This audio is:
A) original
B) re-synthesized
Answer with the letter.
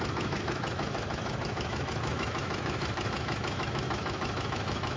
B